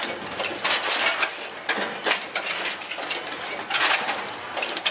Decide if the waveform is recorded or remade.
recorded